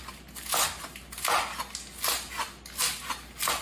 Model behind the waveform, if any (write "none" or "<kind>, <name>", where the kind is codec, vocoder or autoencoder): none